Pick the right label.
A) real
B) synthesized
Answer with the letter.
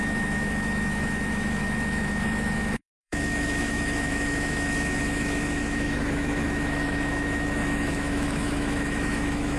B